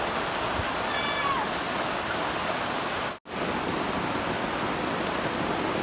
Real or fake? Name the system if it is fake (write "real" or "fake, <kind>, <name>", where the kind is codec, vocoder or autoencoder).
real